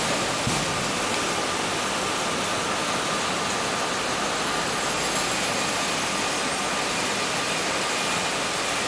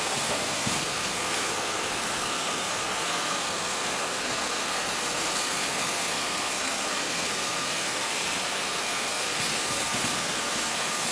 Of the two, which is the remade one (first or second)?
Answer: second